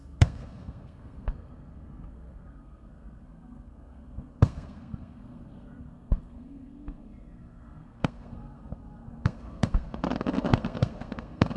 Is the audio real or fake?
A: fake